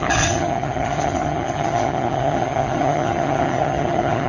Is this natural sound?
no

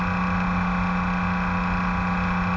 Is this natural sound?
yes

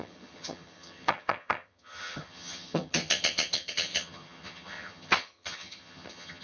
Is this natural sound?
no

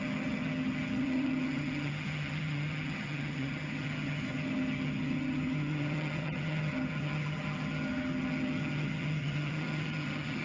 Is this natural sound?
no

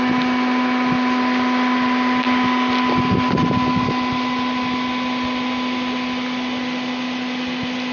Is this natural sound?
yes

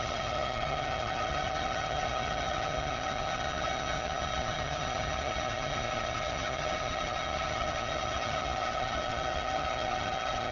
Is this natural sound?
no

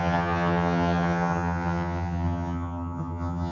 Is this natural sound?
no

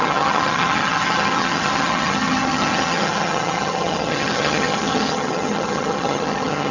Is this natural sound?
no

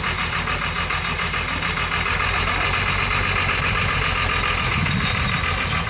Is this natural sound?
yes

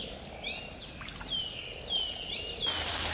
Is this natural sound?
yes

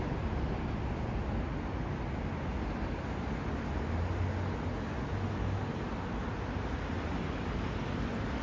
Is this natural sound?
yes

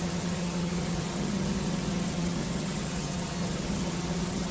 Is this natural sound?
no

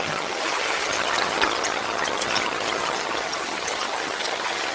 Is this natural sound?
no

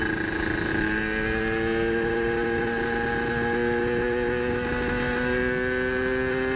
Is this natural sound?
yes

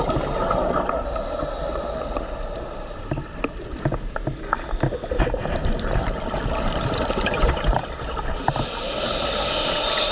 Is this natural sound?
yes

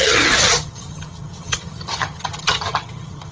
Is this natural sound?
no